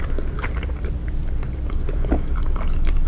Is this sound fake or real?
fake